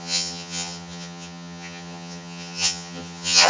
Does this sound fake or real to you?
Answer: fake